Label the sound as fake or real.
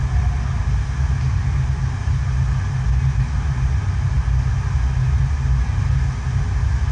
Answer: real